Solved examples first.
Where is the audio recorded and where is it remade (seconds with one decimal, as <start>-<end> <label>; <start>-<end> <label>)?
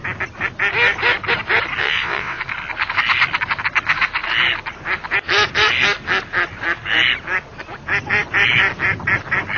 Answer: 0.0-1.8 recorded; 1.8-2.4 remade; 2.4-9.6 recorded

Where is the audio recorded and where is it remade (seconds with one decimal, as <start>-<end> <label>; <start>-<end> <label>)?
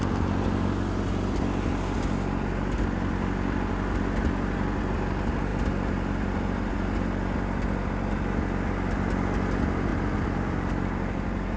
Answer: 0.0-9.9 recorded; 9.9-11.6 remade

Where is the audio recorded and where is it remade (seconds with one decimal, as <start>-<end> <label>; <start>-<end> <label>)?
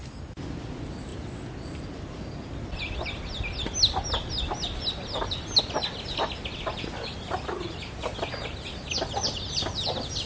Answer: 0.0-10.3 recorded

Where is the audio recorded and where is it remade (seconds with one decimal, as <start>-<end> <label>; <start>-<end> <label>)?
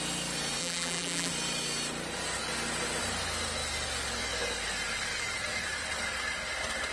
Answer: 0.0-0.6 recorded; 0.6-1.3 remade; 1.3-6.9 recorded